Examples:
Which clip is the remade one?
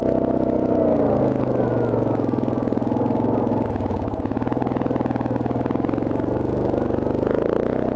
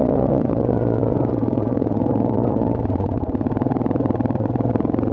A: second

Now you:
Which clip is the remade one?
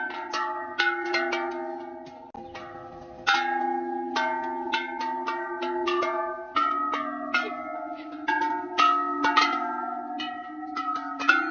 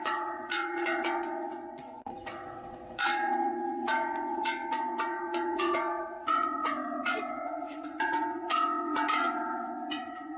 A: second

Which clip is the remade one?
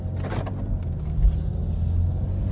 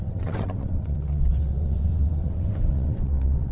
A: second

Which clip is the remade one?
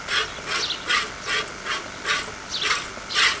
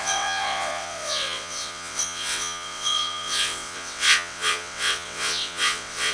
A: second